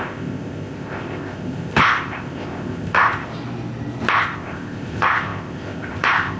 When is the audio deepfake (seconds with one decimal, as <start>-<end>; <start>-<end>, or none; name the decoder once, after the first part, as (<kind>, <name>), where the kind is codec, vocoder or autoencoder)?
0.0-3.3 (codec, ZipCodec); 4.1-6.4